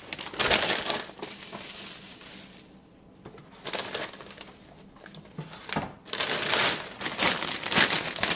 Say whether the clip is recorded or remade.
recorded